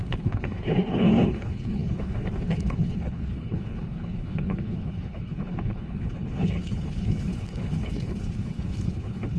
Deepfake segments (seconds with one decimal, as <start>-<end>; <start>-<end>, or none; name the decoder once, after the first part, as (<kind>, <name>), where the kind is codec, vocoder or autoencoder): 0.0-9.4 (codec, HILCodec)